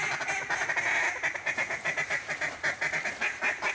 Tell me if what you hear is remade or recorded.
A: recorded